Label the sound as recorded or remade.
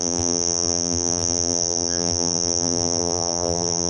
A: remade